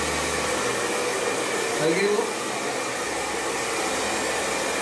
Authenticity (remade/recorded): recorded